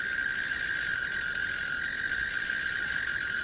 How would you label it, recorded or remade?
remade